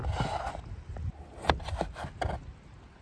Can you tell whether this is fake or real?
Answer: real